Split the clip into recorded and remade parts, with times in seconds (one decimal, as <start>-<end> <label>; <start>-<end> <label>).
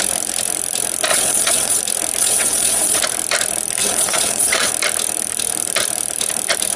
0.0-1.1 recorded; 1.1-1.8 remade; 1.8-2.2 recorded; 2.2-3.0 remade; 3.0-3.8 recorded; 3.8-4.7 remade; 4.7-6.8 recorded